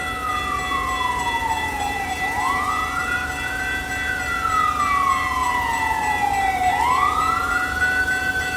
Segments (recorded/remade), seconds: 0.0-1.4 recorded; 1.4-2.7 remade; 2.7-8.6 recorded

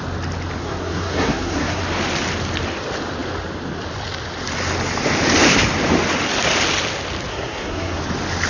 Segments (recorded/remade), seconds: 0.0-0.6 recorded; 0.6-1.8 remade; 1.8-7.3 recorded; 7.3-8.0 remade; 8.0-8.5 recorded

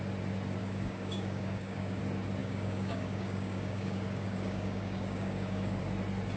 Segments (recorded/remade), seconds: 0.0-0.6 recorded; 0.6-2.0 remade; 2.0-2.4 recorded; 2.4-5.8 remade; 5.8-6.4 recorded

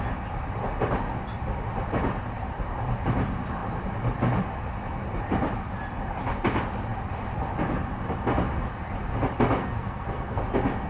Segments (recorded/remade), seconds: 0.0-9.6 recorded; 9.6-10.4 remade; 10.4-10.9 recorded

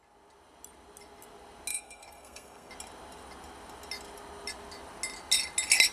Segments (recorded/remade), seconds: 0.0-1.7 recorded; 1.7-2.7 remade; 2.7-5.9 recorded

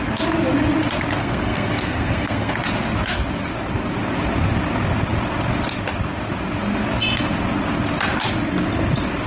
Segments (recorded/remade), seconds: 0.0-1.2 recorded; 1.2-2.5 remade; 2.5-9.3 recorded

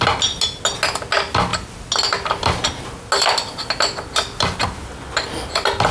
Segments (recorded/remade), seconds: 0.0-5.9 recorded

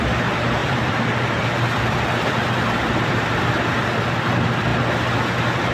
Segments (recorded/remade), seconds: 0.0-0.6 recorded; 0.6-4.0 remade; 4.0-5.7 recorded